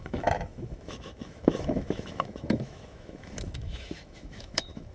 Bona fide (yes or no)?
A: no